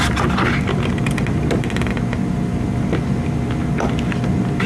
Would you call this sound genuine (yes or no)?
yes